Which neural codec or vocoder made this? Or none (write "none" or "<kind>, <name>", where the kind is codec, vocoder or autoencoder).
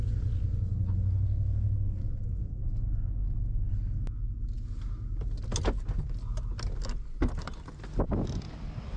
none